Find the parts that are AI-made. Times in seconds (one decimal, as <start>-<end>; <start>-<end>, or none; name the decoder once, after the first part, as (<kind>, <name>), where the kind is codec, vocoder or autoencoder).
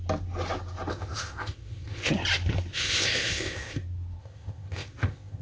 0.9-2.1 (codec, ZipCodec); 2.7-3.8; 4.2-5.4